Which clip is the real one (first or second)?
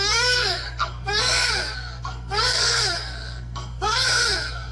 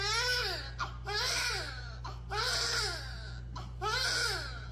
second